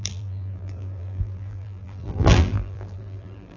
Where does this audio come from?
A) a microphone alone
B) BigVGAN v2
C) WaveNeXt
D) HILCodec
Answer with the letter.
B